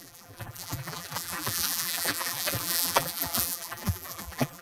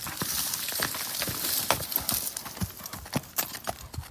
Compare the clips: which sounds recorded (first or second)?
second